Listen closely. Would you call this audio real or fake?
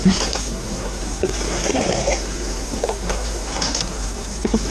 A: fake